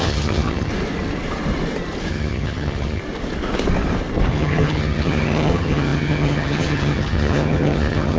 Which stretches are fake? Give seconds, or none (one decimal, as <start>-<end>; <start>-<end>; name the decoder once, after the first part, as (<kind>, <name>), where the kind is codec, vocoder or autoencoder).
0.0-0.7 (vocoder, HiFi-GAN); 2.1-3.0; 4.3-8.2